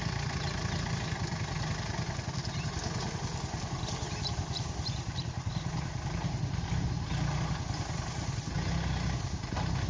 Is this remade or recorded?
recorded